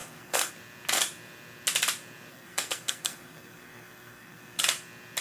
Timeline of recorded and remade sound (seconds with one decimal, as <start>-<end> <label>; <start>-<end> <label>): 0.0-0.5 remade; 0.5-2.3 recorded; 2.3-4.6 remade; 4.6-5.2 recorded